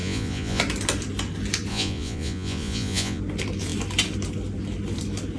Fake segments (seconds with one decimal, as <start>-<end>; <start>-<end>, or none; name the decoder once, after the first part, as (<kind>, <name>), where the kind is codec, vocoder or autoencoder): 0.0-0.6 (vocoder, Vocos); 1.7-3.2